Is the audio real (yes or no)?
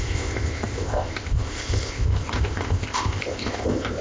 no